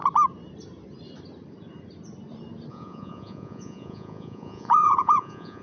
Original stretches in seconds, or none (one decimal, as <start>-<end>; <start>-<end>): 0.0-2.7